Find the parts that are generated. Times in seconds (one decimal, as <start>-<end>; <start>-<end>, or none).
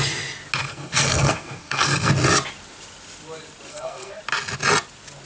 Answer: 0.6-2.1; 3.7-4.2